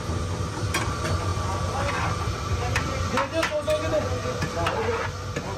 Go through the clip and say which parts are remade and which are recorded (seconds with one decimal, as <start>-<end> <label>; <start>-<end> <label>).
0.0-5.6 recorded